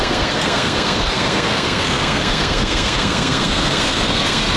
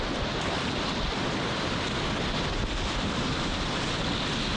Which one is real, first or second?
second